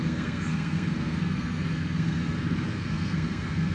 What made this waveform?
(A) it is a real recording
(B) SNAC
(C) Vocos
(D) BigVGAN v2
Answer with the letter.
B